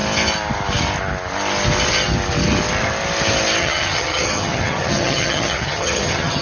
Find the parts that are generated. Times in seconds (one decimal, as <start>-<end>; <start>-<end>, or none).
3.6-6.4